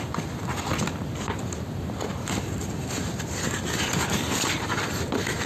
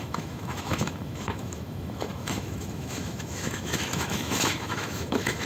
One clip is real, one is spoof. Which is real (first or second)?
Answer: first